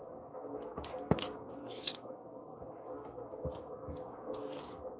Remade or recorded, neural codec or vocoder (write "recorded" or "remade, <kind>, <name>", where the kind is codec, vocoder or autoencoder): remade, codec, SNAC